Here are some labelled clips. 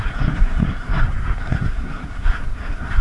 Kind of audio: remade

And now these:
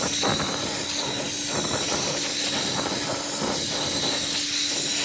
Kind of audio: recorded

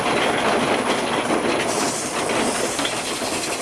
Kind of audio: recorded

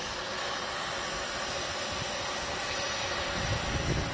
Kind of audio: recorded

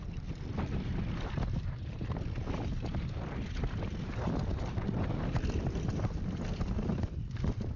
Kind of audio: recorded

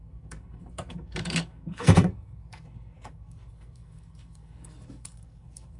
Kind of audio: remade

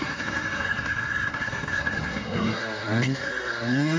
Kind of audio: remade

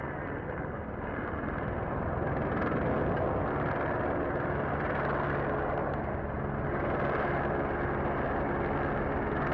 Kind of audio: recorded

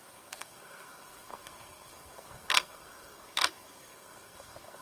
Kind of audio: remade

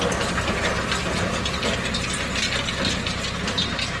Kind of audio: recorded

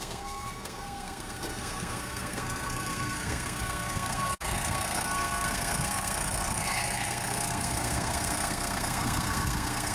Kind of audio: remade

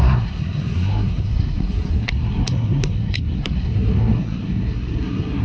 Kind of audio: remade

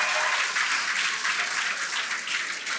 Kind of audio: recorded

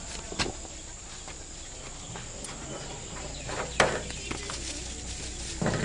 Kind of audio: recorded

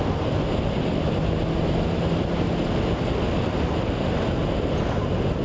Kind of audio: recorded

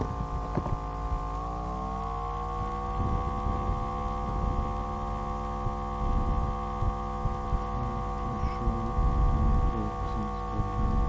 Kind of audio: recorded